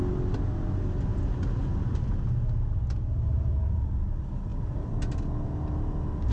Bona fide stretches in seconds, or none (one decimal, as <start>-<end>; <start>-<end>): 0.0-6.3